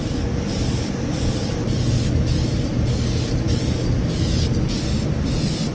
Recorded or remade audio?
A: recorded